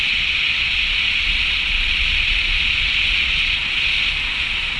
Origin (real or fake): fake